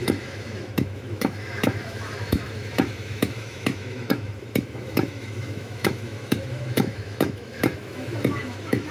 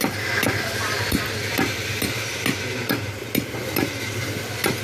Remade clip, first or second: first